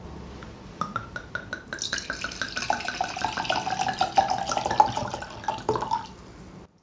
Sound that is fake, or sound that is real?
real